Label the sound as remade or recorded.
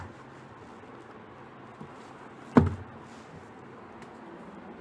recorded